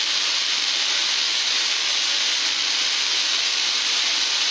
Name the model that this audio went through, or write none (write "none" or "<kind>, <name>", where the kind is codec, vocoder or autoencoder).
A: none